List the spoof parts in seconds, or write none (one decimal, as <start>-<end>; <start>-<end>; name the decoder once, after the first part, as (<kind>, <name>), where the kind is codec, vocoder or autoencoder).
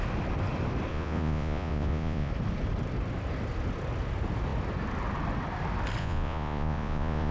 0.9-2.3 (vocoder, Vocos); 6.0-7.3